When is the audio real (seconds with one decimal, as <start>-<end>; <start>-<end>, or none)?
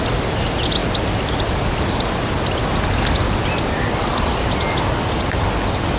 0.0-6.0